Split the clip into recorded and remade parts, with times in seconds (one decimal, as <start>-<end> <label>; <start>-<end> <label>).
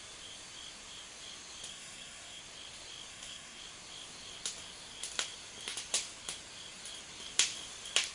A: 0.0-1.7 recorded; 1.7-2.4 remade; 2.4-3.1 recorded; 3.1-3.6 remade; 3.6-8.1 recorded